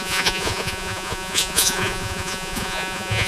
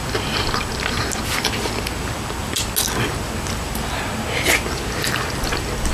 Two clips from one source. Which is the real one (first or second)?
second